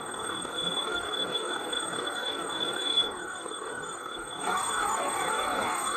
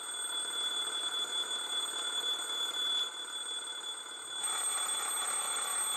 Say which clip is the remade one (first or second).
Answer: first